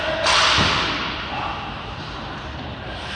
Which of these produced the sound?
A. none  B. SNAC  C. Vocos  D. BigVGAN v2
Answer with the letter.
A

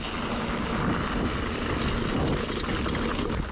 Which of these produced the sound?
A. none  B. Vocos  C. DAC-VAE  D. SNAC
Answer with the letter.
A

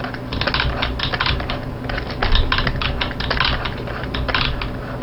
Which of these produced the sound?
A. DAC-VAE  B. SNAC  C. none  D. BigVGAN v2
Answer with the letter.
C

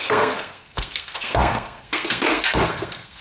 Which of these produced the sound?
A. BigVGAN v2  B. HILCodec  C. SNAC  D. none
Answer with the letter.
C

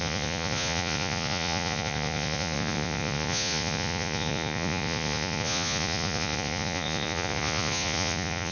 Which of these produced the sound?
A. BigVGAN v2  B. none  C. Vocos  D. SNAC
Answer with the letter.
C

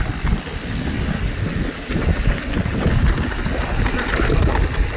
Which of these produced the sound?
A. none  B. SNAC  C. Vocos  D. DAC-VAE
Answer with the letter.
A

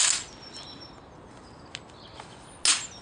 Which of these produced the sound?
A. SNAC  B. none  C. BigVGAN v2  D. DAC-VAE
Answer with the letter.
B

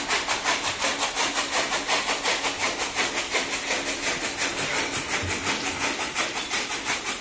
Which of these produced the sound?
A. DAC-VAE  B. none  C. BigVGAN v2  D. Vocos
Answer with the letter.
B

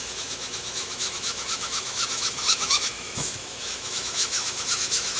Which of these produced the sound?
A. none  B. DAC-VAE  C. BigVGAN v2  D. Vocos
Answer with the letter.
B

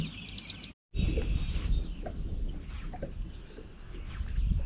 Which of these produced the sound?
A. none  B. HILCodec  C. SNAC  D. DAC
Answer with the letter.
A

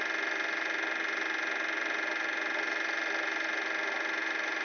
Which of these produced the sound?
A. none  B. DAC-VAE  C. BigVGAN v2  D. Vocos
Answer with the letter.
A